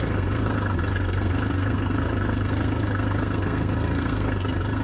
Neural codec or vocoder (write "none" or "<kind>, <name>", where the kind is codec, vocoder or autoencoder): codec, SNAC